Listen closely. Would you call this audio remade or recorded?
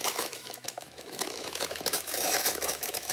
remade